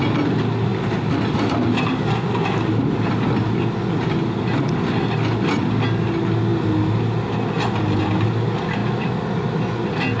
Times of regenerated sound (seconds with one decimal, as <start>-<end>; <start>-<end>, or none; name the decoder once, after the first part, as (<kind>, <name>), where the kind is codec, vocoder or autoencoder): none